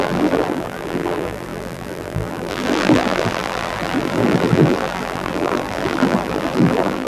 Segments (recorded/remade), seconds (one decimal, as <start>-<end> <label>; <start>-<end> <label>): 0.0-7.1 remade